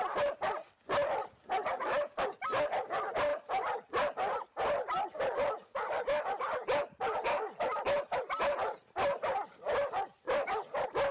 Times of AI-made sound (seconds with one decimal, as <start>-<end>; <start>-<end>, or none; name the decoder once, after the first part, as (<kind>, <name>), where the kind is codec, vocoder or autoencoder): none